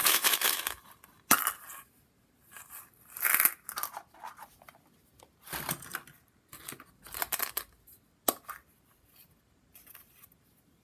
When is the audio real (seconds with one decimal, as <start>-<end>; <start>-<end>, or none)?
0.8-10.8